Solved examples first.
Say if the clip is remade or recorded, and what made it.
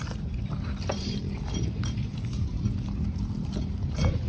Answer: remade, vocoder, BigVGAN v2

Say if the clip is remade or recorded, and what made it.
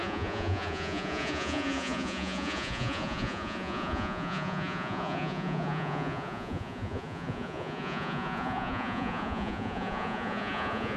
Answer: remade, vocoder, Vocos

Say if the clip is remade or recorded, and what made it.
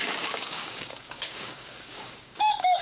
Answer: remade, codec, DAC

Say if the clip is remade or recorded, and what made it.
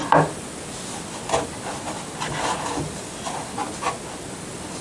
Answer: recorded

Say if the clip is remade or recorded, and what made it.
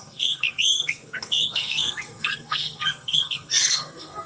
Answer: remade, codec, SNAC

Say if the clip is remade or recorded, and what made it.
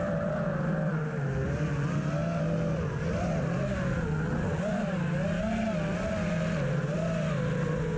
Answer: recorded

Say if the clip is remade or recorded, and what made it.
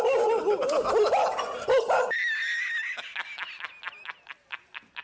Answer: recorded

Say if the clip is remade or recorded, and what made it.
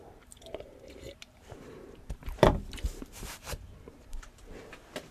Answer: remade, vocoder, BigVGAN v2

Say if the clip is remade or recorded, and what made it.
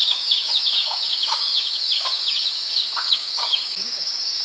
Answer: remade, codec, DAC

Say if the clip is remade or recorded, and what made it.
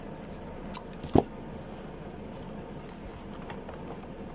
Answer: recorded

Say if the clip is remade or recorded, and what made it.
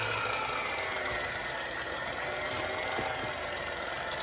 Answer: recorded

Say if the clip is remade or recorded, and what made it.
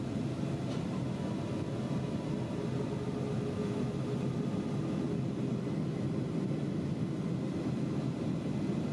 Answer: recorded